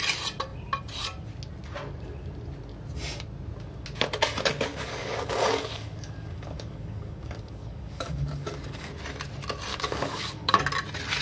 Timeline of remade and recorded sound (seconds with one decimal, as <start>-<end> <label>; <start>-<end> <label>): 0.0-4.7 recorded; 4.7-8.9 remade; 8.9-9.7 recorded; 9.7-10.6 remade; 10.6-11.2 recorded